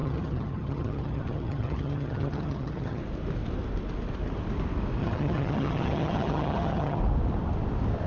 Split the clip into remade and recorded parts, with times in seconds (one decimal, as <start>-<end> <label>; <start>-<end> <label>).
0.0-3.0 remade; 3.0-5.0 recorded; 5.0-7.0 remade; 7.0-8.1 recorded